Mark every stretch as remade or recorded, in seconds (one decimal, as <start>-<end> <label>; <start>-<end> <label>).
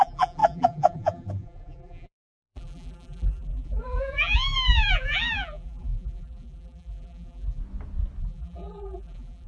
0.0-7.6 remade; 7.6-8.2 recorded; 8.2-9.5 remade